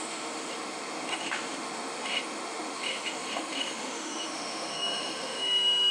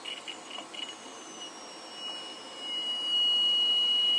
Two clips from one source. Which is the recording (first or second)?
second